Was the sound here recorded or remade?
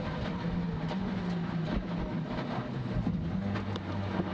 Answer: recorded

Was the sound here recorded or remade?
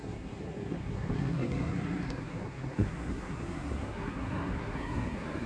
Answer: remade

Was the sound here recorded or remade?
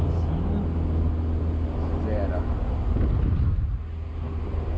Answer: recorded